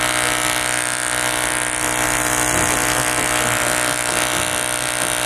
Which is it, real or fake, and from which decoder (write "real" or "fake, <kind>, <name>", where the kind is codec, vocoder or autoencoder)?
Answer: real